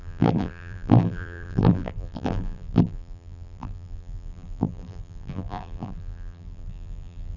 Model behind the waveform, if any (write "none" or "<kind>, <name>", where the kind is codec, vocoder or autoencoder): vocoder, BigVGAN v2